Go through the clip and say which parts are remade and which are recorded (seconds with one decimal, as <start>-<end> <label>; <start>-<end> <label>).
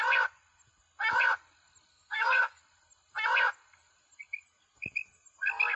0.0-1.9 recorded; 1.9-2.6 remade; 2.6-5.8 recorded